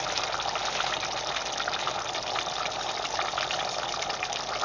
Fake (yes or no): no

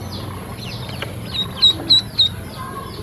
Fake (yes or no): no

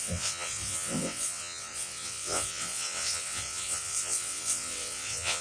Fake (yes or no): yes